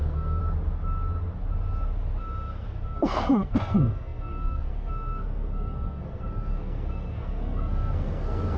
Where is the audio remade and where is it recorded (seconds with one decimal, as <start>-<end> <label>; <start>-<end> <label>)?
0.0-0.4 remade; 0.4-2.2 recorded; 2.2-8.6 remade